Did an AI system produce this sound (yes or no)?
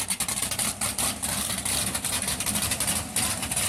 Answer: yes